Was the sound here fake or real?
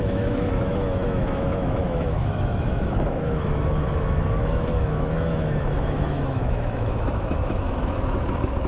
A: fake